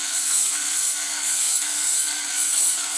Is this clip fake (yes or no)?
yes